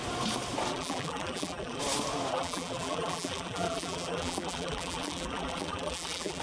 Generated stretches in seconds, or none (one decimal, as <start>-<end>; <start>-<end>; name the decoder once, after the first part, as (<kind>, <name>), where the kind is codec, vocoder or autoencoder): 0.7-1.8 (vocoder, BigVGAN v2); 2.3-6.4

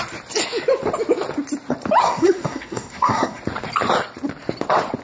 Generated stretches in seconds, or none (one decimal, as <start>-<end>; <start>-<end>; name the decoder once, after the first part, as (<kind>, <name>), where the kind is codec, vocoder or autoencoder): 2.0-3.4 (codec, SNAC)

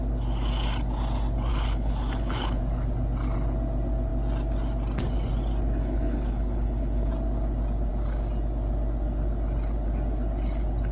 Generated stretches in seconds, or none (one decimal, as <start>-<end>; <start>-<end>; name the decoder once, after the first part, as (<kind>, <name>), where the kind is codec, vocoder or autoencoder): 1.5-2.6 (codec, HILCodec); 5.8-7.1

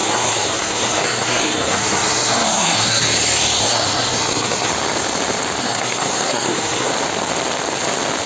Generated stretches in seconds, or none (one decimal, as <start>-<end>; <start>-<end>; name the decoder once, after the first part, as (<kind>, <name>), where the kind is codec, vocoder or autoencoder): 0.0-3.0 (codec, SNAC); 3.6-4.7; 5.6-6.9